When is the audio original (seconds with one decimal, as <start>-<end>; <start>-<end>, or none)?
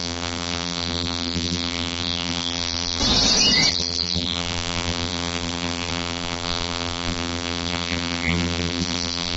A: 3.0-3.7